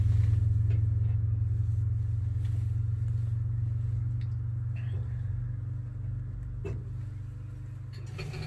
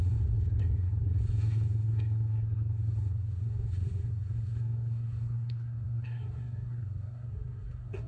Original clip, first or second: first